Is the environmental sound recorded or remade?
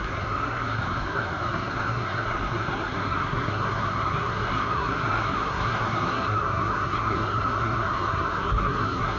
remade